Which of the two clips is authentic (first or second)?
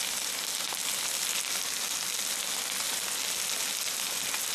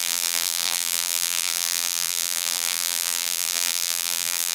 first